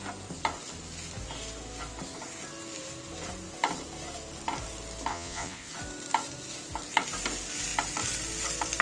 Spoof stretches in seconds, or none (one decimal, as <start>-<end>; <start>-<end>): 5.1-5.7